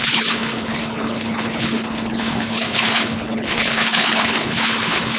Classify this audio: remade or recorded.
remade